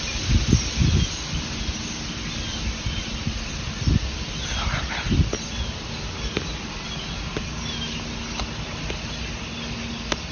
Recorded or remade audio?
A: recorded